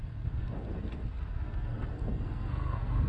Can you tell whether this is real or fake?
fake